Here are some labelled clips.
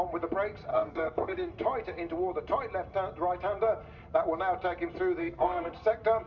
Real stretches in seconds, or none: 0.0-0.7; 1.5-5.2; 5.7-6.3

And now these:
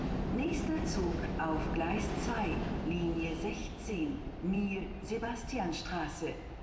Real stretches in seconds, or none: 1.0-3.6; 5.6-6.6

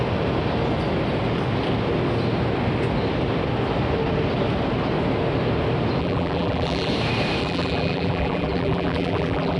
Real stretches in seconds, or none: 0.0-6.0; 6.9-7.4

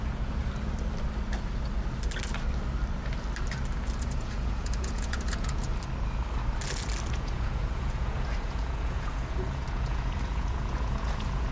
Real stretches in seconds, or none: 0.4-4.0; 5.7-7.1

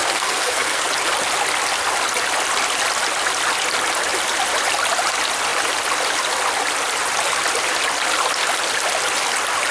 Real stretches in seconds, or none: 0.8-9.7

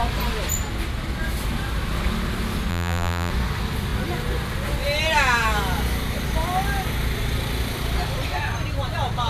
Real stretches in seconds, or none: 0.0-2.7; 3.3-9.3

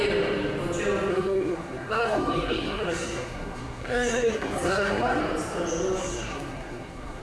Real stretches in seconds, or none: 0.0-1.1; 5.2-6.0